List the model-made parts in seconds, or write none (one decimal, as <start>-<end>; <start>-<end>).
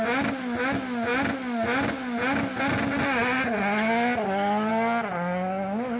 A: none